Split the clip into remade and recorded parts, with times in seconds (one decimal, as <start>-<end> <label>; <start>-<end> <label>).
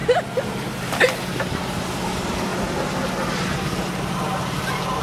0.0-5.0 recorded